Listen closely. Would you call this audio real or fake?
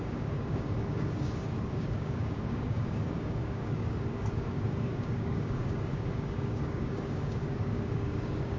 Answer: fake